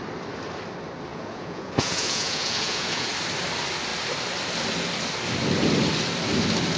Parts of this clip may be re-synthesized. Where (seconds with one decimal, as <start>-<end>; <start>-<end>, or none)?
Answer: 1.1-3.1